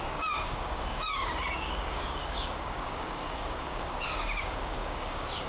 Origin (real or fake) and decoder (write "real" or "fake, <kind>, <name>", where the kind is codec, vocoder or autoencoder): fake, codec, DAC